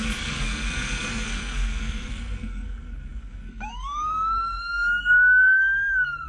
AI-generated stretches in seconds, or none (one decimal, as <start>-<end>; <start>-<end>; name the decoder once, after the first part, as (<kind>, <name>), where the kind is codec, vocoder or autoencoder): 0.0-6.3 (codec, SNAC)